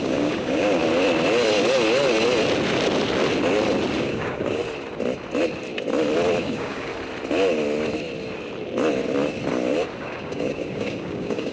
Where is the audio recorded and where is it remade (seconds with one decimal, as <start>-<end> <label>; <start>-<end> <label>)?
0.0-0.8 remade; 0.8-4.0 recorded; 4.0-4.6 remade; 4.6-6.4 recorded; 6.4-6.9 remade; 6.9-10.0 recorded; 10.0-11.5 remade